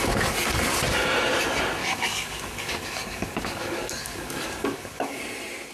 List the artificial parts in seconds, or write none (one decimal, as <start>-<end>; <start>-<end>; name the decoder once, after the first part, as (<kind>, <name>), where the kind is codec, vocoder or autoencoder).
1.8-5.2 (codec, DAC)